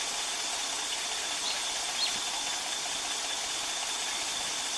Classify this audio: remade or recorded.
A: recorded